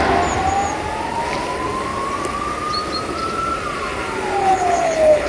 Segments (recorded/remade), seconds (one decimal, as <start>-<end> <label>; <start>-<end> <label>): 0.0-4.4 recorded; 4.4-5.3 remade